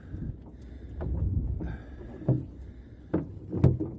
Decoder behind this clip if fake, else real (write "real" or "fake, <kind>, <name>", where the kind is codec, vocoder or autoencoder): real